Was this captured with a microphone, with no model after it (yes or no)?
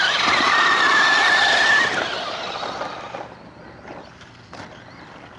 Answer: yes